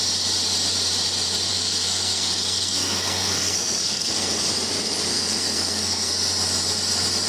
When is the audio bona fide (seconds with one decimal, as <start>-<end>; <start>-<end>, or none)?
0.0-1.5; 4.4-5.1; 6.1-7.3

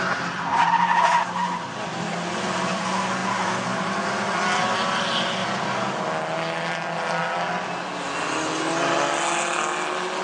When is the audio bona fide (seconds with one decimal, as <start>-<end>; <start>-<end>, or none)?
0.0-10.2

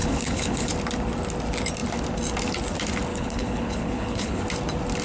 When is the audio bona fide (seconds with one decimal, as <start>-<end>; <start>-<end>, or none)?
0.7-3.1; 4.4-5.0

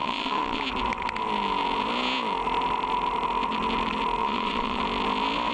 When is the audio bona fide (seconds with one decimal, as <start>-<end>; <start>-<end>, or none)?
0.6-4.2; 4.8-5.5

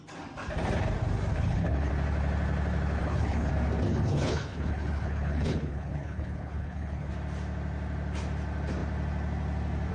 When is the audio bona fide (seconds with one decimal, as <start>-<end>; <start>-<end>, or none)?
0.0-1.3; 1.9-3.0; 3.5-3.9; 7.1-9.9

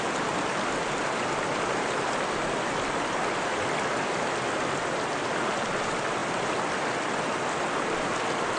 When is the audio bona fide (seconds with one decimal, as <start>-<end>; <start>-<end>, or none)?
0.0-8.6

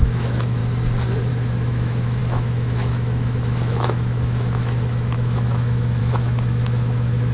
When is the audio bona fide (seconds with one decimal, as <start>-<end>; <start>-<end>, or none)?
0.6-1.3

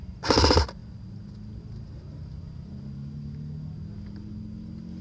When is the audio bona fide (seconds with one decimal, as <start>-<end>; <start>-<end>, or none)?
0.0-5.0